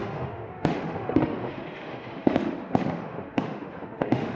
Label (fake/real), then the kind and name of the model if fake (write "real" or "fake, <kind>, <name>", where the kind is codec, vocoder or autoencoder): fake, autoencoder, DAC-VAE